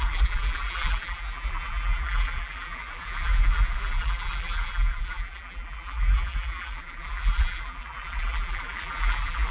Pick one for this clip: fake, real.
fake